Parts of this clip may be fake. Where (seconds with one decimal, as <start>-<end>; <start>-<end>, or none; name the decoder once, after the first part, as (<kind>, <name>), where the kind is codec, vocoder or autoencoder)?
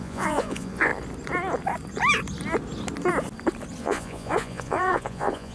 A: 0.0-0.9 (vocoder, Vocos); 3.8-5.5